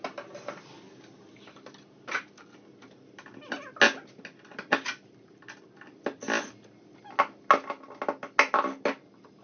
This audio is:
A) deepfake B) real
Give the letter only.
B